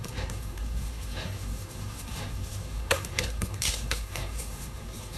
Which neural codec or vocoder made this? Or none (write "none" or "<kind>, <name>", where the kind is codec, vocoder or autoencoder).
codec, SNAC